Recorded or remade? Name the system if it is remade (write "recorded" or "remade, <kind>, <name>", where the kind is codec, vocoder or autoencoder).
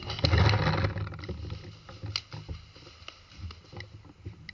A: recorded